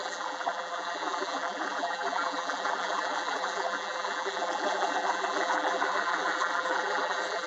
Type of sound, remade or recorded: remade